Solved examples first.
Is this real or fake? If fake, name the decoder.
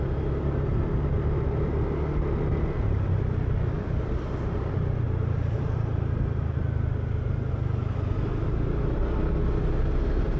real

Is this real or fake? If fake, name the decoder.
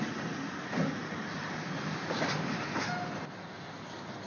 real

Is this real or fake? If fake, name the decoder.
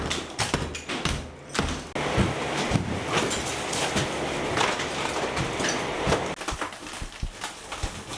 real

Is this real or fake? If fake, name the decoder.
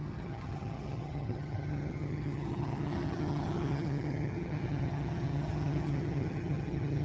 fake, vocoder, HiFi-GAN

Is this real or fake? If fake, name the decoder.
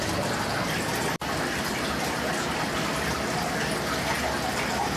real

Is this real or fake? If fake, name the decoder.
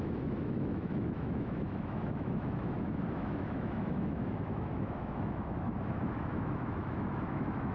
fake, autoencoder, DAC-VAE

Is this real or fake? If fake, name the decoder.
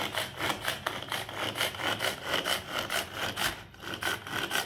real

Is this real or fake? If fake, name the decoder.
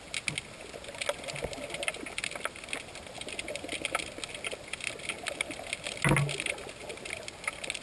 real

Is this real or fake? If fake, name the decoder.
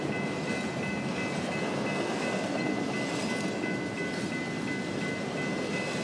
real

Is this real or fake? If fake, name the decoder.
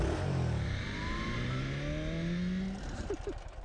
real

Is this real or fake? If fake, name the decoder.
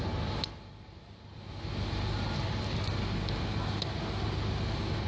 real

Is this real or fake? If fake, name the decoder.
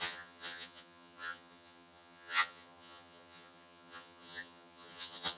fake, vocoder, HiFi-GAN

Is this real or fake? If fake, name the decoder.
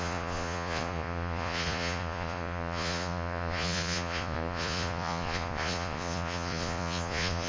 fake, vocoder, Vocos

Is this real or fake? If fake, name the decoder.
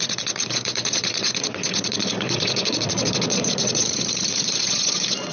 fake, vocoder, Vocos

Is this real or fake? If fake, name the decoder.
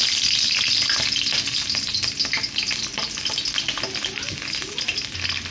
real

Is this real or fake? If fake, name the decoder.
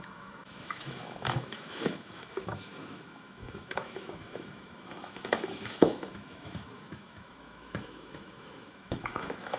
fake, autoencoder, DAC-VAE